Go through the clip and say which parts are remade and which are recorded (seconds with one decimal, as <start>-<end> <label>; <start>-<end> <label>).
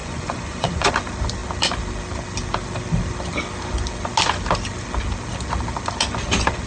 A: 0.0-0.9 remade; 0.9-6.7 recorded